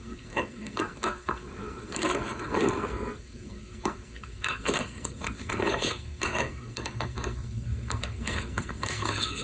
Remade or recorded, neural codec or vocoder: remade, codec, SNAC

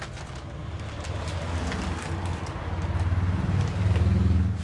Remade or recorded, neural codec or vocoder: recorded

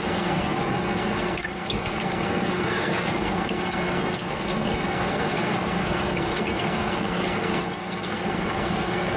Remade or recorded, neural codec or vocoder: remade, codec, SNAC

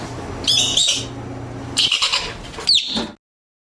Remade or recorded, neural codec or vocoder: recorded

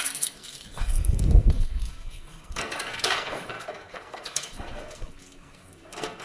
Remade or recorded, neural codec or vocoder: remade, codec, SNAC